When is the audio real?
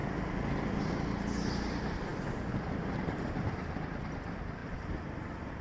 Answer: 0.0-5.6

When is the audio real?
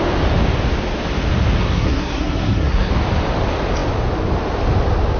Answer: 0.0-1.6; 2.9-5.2